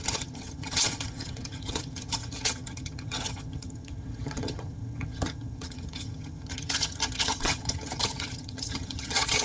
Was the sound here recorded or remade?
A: remade